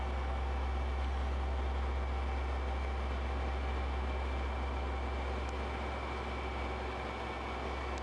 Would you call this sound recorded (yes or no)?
yes